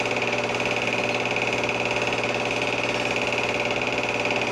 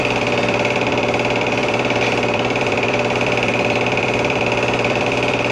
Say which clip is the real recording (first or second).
first